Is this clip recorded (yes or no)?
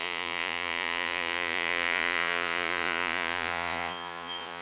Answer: no